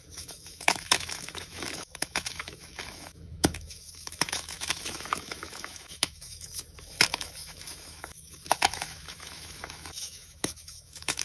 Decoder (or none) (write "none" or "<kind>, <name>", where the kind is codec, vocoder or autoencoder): autoencoder, DAC-VAE